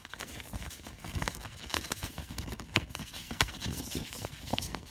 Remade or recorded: remade